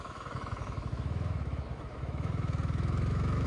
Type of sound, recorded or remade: remade